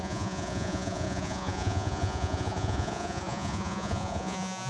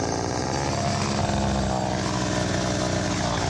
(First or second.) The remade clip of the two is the first